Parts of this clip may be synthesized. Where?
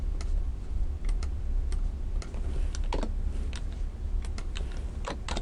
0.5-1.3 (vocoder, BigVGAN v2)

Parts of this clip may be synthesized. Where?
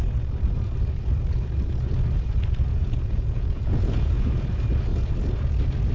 2.7-4.2 (vocoder, Vocos)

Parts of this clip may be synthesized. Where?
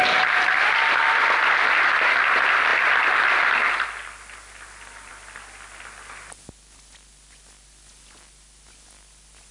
none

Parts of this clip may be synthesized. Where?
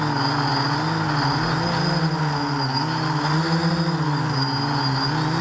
none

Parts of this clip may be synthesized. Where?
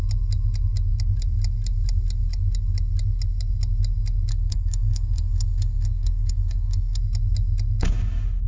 4.3-7.0 (codec, SNAC)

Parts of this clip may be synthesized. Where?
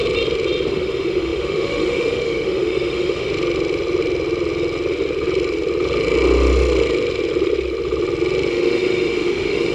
0.7-3.3 (autoencoder, DAC-VAE); 8.5-9.7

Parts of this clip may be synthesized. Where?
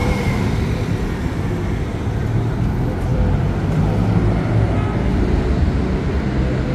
0.0-2.0 (vocoder, BigVGAN v2); 3.1-4.5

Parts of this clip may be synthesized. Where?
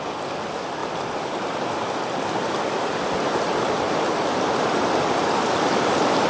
0.8-4.6 (vocoder, BigVGAN v2)